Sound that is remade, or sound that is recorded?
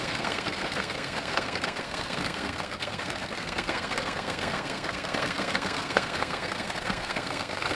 remade